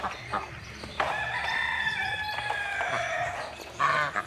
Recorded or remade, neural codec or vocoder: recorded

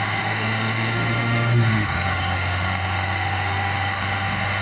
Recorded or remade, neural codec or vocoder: remade, autoencoder, DAC-VAE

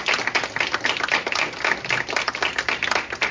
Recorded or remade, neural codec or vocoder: recorded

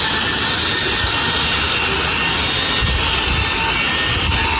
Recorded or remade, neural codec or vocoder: recorded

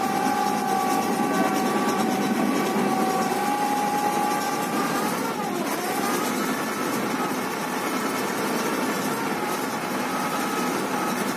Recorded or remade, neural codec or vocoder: recorded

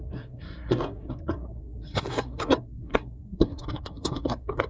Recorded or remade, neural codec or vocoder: remade, codec, SNAC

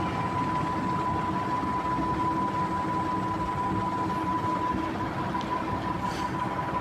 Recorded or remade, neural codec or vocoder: recorded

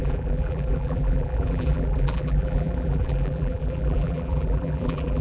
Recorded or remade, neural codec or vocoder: remade, vocoder, BigVGAN v2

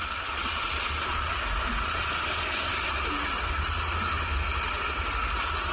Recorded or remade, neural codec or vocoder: recorded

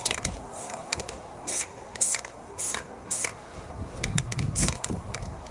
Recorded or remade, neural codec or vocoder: remade, codec, SNAC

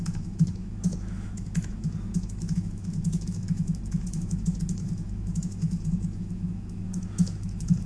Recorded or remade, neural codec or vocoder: remade, autoencoder, DAC-VAE